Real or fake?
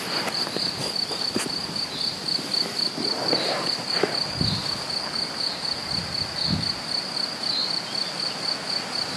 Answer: real